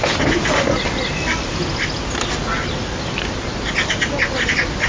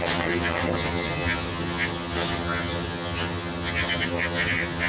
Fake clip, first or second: second